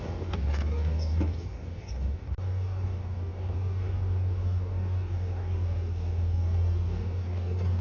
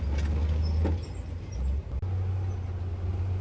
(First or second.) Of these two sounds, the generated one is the first